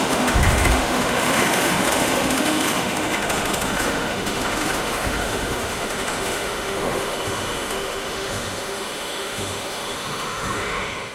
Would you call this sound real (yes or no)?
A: no